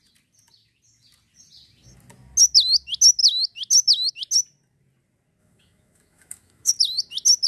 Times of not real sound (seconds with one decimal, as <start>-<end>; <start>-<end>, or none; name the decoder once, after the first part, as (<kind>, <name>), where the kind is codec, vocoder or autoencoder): 5.4-6.7 (autoencoder, DAC-VAE)